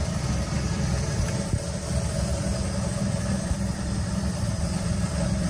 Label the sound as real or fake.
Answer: real